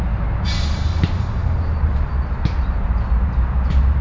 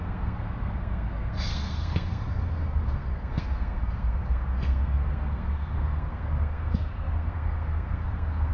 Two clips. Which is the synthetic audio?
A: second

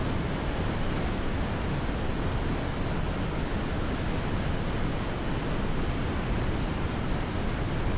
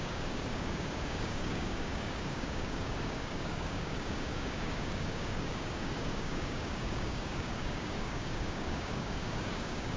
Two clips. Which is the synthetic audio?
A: second